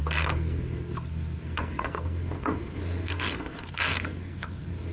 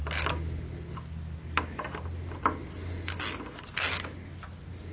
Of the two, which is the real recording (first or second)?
second